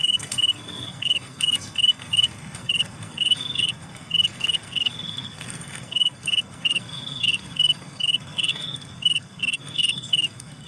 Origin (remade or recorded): remade